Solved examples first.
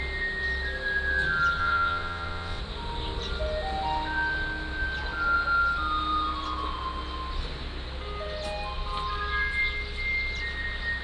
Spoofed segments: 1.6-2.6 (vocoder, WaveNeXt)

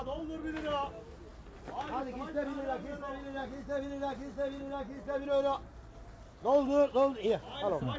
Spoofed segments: none